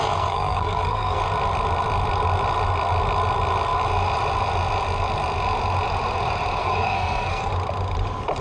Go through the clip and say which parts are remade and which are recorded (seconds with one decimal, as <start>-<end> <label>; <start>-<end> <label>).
0.0-1.2 remade; 1.2-6.6 recorded; 6.6-7.5 remade; 7.5-8.4 recorded